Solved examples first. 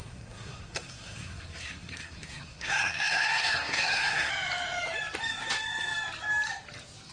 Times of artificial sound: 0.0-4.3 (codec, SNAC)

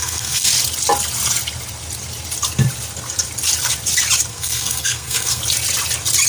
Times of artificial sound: 0.0-0.5 (codec, SNAC); 4.3-5.4

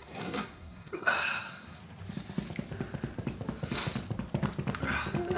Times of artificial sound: 0.0-1.8 (codec, SNAC)